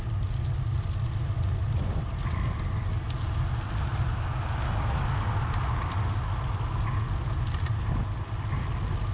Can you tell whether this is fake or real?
real